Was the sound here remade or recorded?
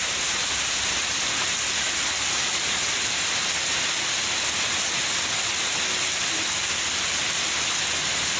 recorded